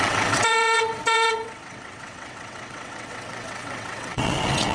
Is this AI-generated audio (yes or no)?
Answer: yes